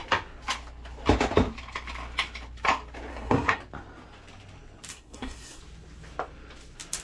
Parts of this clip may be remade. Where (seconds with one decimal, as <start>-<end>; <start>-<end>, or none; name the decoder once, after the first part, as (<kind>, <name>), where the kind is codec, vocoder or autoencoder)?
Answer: 3.1-3.6 (codec, SNAC); 4.9-5.6